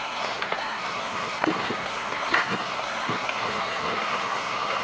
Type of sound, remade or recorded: remade